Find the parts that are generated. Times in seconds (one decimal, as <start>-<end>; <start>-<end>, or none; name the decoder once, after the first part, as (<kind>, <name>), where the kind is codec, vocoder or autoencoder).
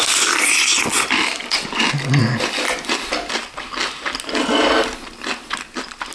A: none